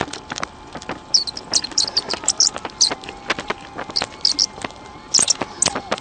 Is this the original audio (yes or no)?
yes